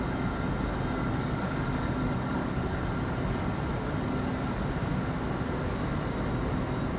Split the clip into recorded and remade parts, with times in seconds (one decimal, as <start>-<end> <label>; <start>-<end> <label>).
0.0-1.0 recorded; 1.0-2.8 remade; 2.8-3.7 recorded; 3.7-4.3 remade; 4.3-7.0 recorded